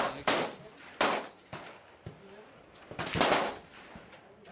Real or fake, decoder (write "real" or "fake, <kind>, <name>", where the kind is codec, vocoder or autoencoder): real